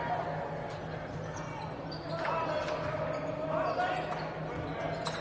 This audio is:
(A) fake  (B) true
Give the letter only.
B